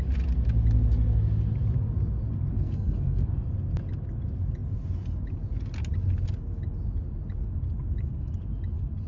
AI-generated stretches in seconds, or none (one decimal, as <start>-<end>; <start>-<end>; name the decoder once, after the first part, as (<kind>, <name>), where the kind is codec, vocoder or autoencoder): 2.5-3.5 (codec, SNAC)